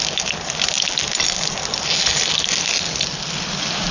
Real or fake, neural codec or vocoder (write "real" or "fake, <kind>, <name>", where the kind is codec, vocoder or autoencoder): real